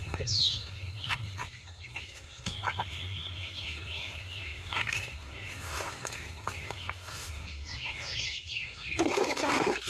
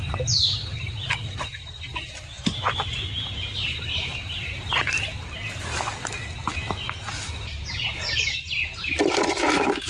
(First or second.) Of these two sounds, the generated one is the first